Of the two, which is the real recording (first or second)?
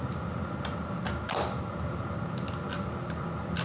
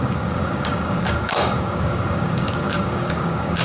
first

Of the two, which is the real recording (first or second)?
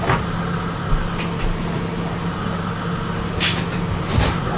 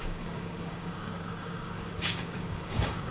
first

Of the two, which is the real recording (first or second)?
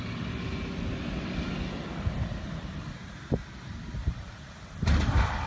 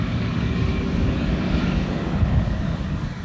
first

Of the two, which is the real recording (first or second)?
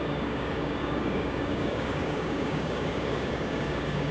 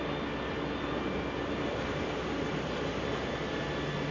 second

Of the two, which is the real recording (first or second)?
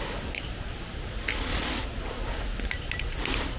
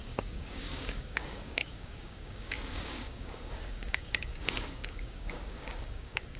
first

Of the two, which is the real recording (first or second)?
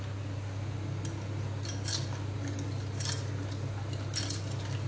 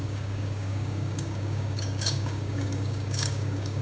first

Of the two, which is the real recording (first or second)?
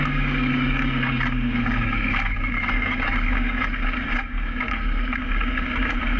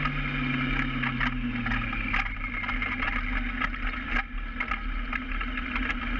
second